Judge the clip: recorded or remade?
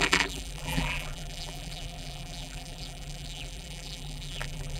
remade